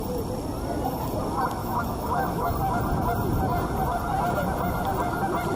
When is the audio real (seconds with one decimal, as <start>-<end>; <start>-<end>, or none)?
0.0-1.6; 2.5-5.6